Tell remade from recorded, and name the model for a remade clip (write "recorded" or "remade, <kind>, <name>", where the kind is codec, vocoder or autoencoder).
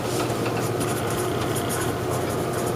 recorded